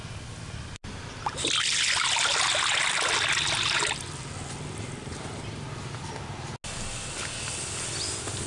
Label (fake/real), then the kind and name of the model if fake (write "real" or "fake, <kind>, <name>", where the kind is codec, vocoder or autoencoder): real